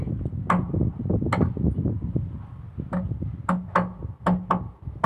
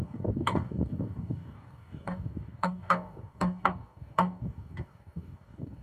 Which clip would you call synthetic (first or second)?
second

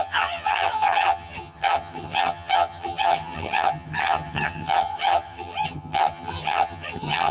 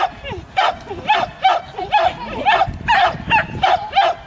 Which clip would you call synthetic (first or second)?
first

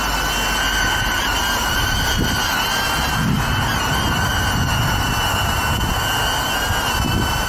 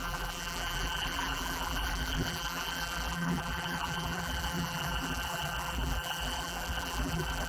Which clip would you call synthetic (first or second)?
second